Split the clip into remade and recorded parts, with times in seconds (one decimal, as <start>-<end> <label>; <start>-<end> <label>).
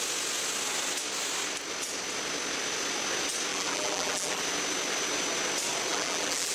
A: 0.0-3.5 recorded; 3.5-4.4 remade; 4.4-5.9 recorded; 5.9-6.5 remade